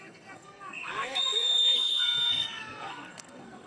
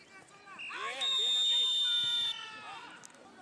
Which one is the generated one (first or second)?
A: first